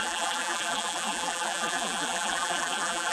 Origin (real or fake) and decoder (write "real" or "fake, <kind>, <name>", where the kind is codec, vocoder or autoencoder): fake, vocoder, BigVGAN v2